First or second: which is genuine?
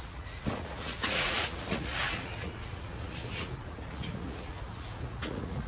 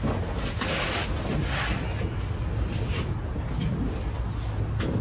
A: second